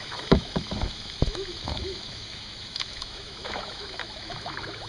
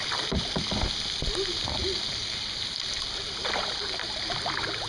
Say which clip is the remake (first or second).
first